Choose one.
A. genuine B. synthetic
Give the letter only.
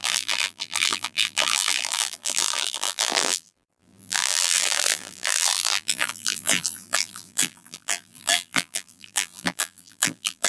B